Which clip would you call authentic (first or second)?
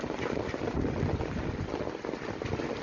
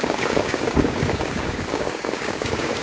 first